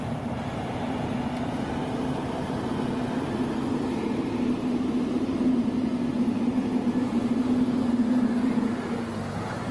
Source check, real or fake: fake